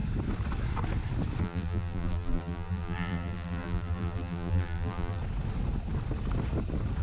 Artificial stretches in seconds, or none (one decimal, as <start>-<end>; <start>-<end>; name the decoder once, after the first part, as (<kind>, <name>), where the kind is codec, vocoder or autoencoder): 1.4-5.2 (vocoder, BigVGAN v2)